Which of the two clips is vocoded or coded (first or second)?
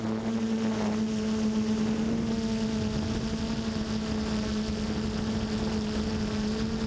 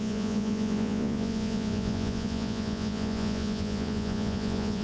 second